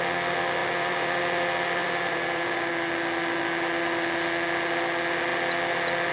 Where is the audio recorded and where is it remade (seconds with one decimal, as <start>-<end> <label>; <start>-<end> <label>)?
0.0-0.6 recorded; 0.6-1.2 remade; 1.2-1.8 recorded; 1.8-2.7 remade; 2.7-6.1 recorded